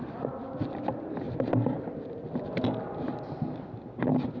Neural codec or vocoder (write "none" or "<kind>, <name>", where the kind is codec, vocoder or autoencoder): none